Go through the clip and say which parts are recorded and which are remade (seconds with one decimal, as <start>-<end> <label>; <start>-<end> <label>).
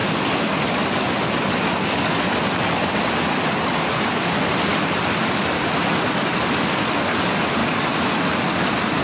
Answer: 0.0-9.0 recorded